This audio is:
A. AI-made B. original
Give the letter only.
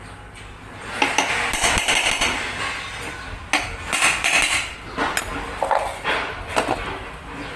B